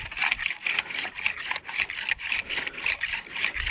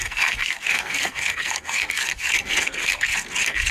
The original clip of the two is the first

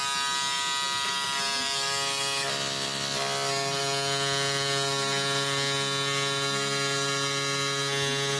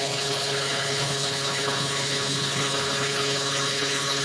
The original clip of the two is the first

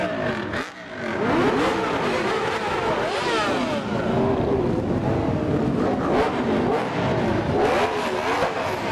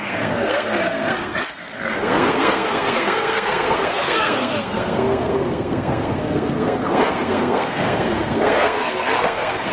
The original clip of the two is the first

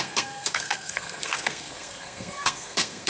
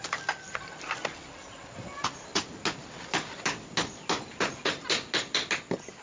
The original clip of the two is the second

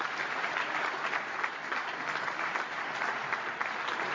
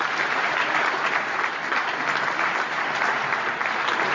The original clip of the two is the second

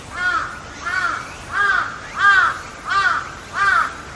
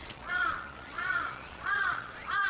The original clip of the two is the first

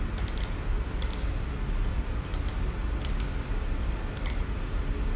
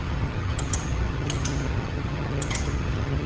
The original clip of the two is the first